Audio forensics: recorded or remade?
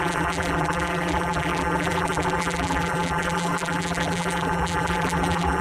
remade